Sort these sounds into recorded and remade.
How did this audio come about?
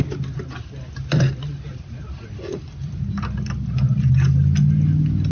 recorded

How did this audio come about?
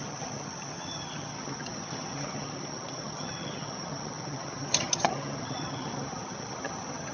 remade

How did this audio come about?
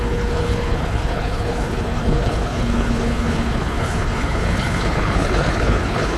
remade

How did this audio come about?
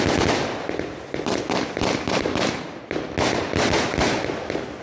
recorded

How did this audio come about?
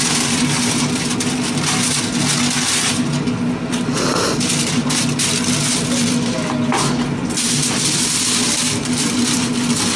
recorded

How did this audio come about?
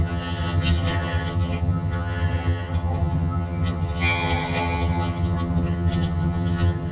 remade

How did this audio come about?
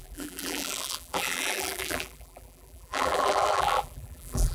remade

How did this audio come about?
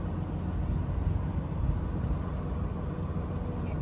recorded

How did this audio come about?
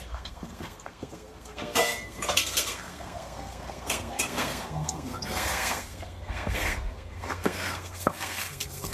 remade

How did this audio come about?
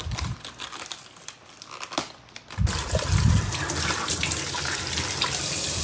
recorded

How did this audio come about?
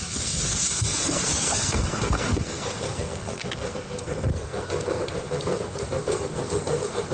remade